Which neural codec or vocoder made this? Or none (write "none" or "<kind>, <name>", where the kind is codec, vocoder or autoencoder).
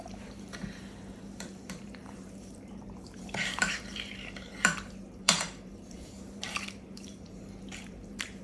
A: vocoder, BigVGAN v2